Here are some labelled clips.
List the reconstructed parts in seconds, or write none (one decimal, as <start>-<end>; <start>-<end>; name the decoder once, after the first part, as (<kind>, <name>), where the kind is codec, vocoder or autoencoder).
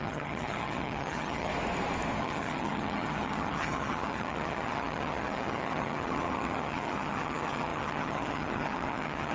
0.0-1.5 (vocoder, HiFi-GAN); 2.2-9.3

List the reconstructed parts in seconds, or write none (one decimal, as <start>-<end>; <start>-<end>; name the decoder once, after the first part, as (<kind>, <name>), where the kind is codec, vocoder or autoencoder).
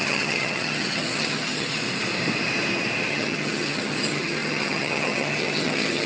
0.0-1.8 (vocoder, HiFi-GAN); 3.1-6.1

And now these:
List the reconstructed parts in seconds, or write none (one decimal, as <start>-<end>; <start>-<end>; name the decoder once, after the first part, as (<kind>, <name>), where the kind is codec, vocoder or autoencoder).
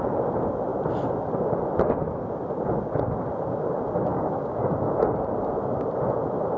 4.1-4.9 (codec, DAC)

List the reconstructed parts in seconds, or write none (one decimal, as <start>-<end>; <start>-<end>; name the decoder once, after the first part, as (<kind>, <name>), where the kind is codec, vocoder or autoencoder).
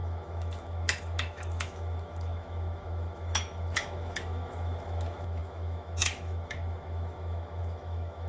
0.0-8.3 (autoencoder, DAC-VAE)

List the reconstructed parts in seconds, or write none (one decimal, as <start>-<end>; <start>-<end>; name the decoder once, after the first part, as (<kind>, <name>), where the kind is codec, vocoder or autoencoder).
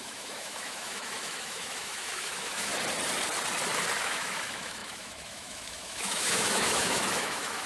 0.0-2.7 (autoencoder, DAC-VAE); 4.0-7.7